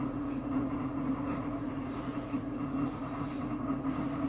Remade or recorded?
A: remade